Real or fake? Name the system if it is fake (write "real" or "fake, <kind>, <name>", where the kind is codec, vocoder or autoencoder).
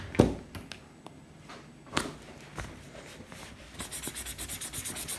real